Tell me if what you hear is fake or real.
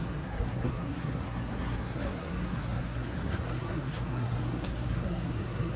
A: fake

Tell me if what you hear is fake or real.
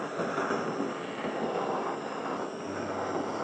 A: real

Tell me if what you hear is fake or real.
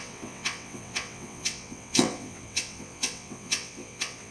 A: fake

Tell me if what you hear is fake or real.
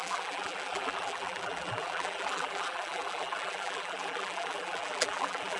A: fake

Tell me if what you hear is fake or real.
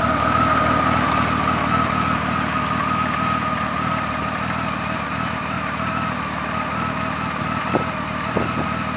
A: real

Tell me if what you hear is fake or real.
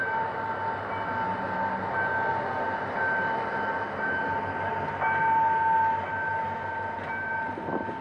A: real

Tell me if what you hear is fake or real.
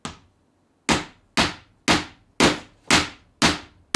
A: real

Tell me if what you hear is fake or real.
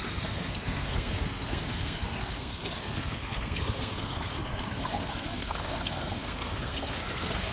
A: fake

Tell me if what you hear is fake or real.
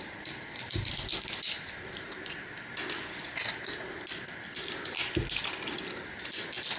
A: real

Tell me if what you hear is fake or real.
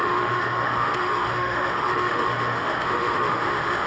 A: fake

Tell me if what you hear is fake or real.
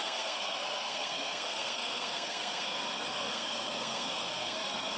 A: fake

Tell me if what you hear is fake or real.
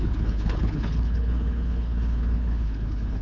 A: fake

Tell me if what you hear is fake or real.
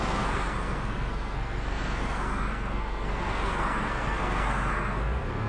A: fake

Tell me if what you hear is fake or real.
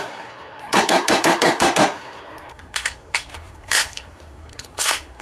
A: fake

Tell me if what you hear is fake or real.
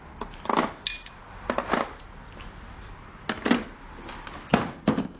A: real